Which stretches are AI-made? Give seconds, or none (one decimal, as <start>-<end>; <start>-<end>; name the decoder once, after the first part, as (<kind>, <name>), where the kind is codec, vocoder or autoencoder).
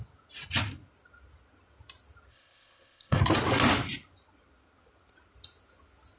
2.3-3.2 (codec, ZipCodec)